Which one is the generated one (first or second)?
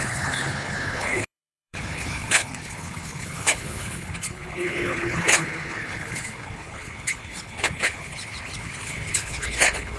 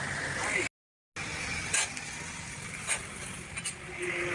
first